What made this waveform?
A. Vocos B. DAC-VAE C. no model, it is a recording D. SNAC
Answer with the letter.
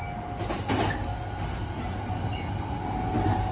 C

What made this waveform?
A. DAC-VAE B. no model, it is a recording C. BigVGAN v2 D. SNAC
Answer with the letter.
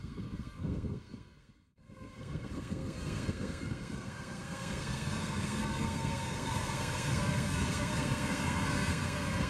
D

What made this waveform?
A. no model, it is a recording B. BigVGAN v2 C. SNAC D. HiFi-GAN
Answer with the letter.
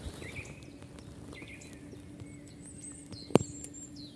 A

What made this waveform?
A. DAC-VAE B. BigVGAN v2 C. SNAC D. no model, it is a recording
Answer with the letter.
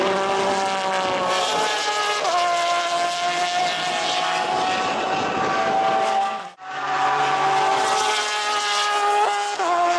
D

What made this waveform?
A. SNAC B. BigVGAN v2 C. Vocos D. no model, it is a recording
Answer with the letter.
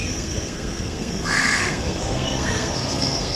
A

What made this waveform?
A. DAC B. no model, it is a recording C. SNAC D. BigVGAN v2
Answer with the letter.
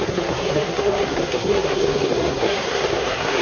C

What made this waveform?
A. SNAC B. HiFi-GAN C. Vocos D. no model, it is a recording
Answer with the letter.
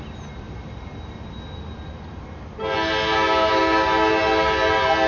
D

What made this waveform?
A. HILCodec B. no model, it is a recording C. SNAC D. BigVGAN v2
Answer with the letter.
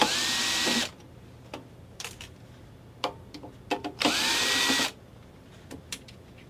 B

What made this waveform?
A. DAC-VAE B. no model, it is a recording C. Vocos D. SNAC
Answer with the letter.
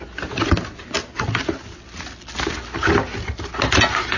B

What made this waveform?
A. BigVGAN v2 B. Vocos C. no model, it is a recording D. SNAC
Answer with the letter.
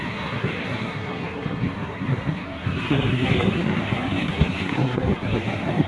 D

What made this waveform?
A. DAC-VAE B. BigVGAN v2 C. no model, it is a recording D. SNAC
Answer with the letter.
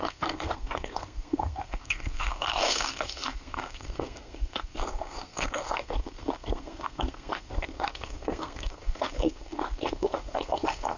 D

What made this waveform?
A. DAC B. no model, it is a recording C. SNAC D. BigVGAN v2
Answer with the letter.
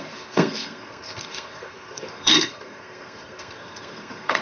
C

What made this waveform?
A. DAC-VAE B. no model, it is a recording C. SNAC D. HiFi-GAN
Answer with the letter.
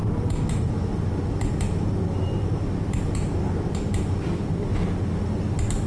B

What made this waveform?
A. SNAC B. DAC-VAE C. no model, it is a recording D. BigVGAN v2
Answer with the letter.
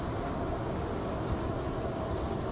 C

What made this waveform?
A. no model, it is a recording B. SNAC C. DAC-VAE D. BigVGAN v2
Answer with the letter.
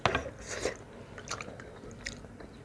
A